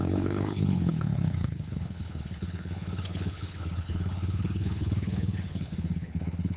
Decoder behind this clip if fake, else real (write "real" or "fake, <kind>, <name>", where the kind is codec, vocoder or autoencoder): fake, codec, HILCodec